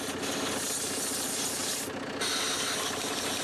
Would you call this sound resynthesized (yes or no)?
no